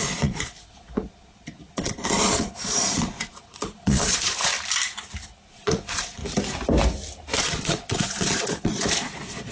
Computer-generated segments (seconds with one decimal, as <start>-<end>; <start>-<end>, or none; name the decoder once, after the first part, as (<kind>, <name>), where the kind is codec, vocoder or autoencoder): 0.0-4.5 (vocoder, Vocos); 5.5-6.2; 7.4-9.5